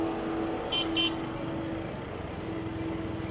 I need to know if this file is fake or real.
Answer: real